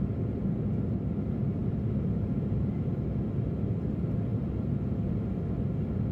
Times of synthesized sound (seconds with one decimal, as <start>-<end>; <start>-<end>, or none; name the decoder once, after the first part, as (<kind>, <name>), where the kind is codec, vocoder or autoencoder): none

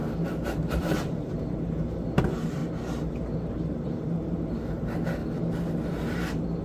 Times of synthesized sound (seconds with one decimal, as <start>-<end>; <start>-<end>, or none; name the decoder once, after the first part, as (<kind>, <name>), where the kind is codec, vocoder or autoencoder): 0.0-2.6 (vocoder, BigVGAN v2); 3.2-5.2; 5.9-6.6

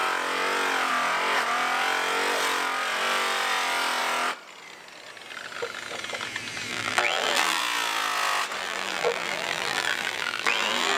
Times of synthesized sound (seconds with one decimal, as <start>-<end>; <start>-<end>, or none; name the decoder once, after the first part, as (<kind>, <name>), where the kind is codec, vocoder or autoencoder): 6.7-7.6 (vocoder, BigVGAN v2); 8.6-11.0